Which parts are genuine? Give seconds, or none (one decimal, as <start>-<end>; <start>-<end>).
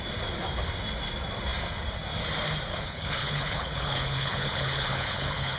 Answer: 0.0-2.7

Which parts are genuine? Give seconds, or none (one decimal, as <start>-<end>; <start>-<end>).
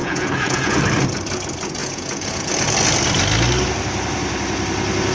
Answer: 0.8-1.8; 2.5-5.1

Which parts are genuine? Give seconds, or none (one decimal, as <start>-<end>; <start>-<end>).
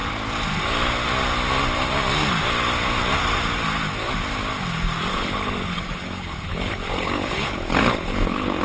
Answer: 0.0-5.1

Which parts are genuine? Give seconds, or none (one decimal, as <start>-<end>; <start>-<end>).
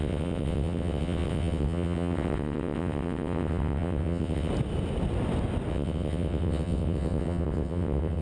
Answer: 4.5-5.7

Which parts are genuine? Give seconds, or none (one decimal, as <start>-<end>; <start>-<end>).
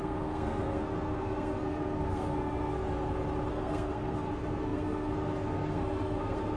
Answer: 2.9-3.5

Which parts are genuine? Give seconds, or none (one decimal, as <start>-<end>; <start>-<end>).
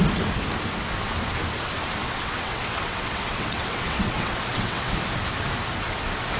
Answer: 0.0-2.0; 4.9-6.4